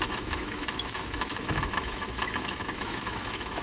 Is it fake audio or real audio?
fake